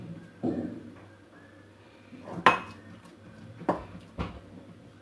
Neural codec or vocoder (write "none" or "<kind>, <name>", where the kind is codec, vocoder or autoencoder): none